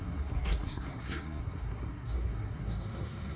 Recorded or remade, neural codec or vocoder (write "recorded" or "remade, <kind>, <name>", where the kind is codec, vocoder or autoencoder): remade, codec, SNAC